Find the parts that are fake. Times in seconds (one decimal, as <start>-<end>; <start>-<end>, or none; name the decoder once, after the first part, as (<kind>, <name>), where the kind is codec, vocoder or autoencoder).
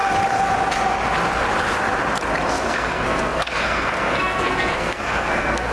2.5-5.7 (codec, SNAC)